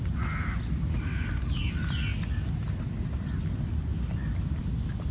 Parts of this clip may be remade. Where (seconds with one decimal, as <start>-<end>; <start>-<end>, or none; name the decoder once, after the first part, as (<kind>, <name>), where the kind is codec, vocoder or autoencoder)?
none